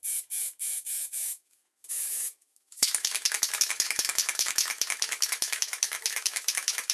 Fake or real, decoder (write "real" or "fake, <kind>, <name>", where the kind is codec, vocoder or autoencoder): fake, autoencoder, DAC-VAE